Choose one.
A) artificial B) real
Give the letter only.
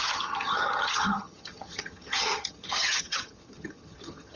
A